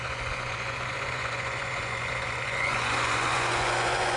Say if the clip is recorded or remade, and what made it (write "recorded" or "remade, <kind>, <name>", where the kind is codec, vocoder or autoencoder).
remade, vocoder, Vocos